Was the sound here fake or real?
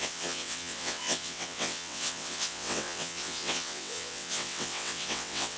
fake